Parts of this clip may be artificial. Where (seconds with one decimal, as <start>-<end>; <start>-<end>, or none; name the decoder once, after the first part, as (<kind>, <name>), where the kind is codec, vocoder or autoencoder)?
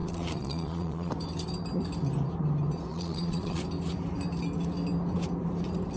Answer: 0.0-1.1 (vocoder, Vocos); 2.9-3.6